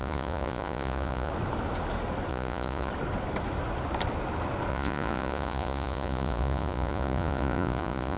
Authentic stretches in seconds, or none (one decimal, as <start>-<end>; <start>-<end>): 1.3-2.3; 2.9-4.7